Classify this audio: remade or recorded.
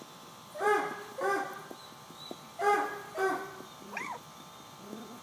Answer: remade